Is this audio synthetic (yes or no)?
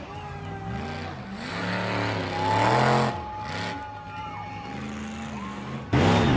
no